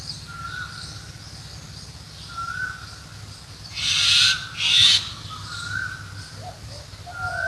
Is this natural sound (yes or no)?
yes